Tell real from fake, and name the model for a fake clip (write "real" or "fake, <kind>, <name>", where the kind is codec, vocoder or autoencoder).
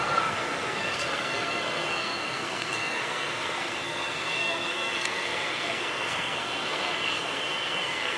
fake, codec, SNAC